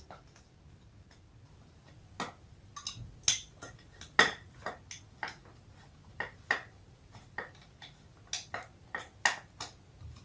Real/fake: real